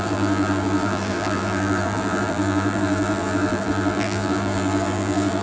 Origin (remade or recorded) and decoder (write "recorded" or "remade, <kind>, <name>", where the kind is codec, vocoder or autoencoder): remade, vocoder, BigVGAN v2